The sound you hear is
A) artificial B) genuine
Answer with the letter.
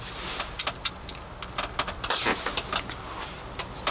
B